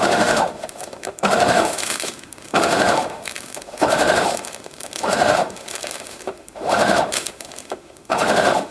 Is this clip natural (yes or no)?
no